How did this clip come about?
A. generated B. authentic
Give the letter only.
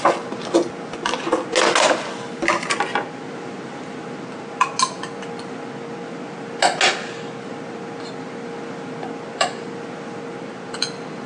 B